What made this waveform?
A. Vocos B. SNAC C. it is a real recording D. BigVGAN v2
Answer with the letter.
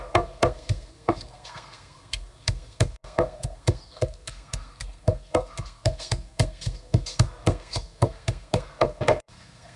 B